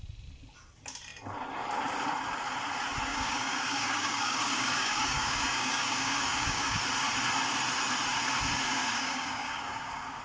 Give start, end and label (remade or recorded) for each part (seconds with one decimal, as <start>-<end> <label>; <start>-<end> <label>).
0.0-3.1 recorded; 3.1-6.8 remade; 6.8-8.8 recorded; 8.8-10.2 remade